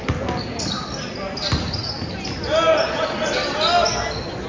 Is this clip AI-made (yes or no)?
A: no